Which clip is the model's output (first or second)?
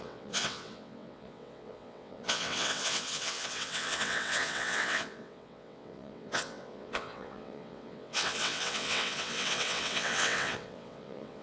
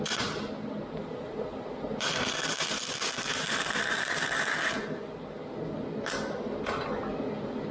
first